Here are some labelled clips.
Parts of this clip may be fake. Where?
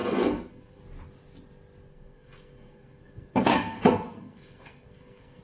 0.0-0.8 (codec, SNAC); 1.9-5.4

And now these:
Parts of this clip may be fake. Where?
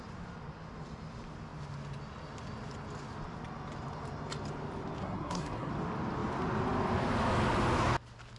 5.0-5.7 (codec, SNAC)